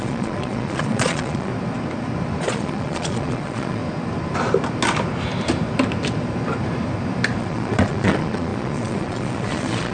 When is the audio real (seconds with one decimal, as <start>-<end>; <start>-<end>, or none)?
1.5-2.4; 3.8-7.4